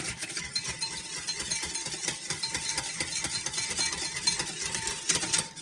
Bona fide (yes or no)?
yes